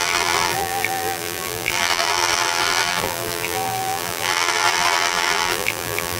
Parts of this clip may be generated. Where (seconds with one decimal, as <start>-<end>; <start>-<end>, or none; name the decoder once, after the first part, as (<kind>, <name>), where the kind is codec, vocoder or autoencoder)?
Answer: 0.0-6.2 (vocoder, BigVGAN v2)